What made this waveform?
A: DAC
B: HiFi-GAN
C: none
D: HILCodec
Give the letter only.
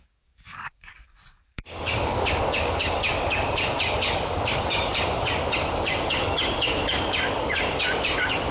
A